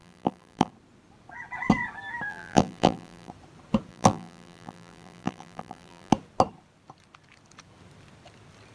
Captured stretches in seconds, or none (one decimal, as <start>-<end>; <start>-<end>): 0.7-2.3; 3.3-3.9; 6.1-8.7